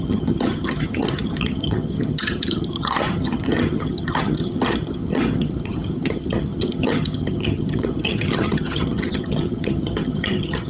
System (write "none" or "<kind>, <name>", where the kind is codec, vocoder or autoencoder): vocoder, HiFi-GAN